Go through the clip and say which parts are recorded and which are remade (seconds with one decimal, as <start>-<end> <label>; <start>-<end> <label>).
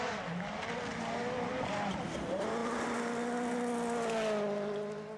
0.0-5.2 recorded